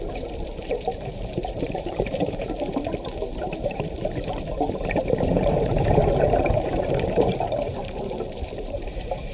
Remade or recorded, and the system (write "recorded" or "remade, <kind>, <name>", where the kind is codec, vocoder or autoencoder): remade, vocoder, BigVGAN v2